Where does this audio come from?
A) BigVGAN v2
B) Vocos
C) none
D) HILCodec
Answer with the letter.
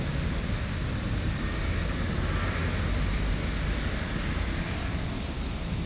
C